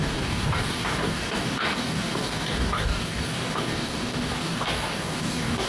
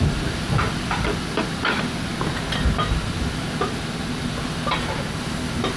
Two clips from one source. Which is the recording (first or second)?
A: second